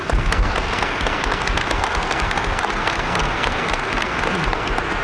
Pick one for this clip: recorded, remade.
remade